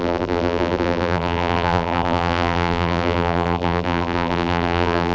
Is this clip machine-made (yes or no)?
yes